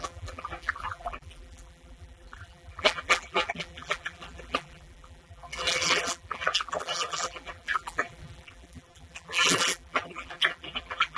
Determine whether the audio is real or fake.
fake